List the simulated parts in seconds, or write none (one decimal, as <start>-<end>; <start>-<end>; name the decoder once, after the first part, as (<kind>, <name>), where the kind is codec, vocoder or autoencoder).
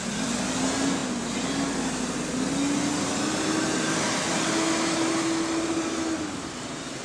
none